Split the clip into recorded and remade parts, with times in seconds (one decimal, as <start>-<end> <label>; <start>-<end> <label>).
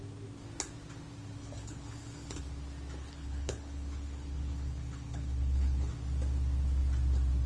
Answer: 0.0-1.4 recorded; 1.4-2.4 remade; 2.4-3.0 recorded; 3.0-5.9 remade; 5.9-7.5 recorded